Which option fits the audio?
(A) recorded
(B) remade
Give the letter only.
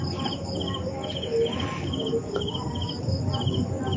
A